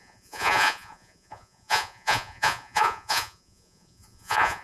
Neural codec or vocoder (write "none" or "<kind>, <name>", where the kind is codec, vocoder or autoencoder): vocoder, Vocos